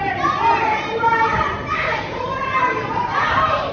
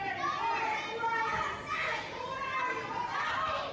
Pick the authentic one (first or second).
second